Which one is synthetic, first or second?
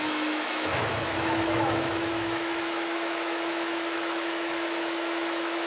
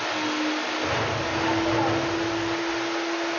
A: first